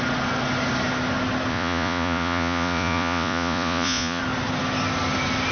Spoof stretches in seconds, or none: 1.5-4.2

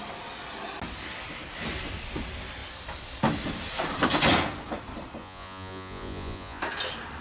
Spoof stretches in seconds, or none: 5.2-6.6

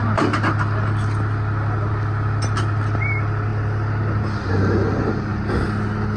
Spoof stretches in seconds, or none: none

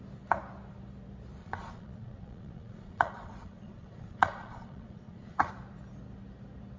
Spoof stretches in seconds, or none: 1.4-5.5